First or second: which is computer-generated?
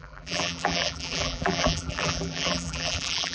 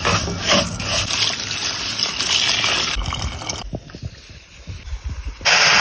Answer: first